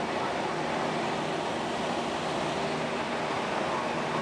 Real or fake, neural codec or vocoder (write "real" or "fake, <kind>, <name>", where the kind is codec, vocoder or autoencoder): real